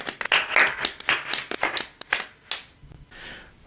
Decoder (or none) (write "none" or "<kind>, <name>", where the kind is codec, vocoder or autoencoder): none